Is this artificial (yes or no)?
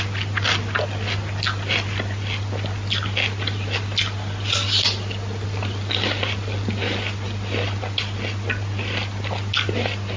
no